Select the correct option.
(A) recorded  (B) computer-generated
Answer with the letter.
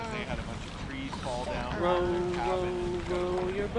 A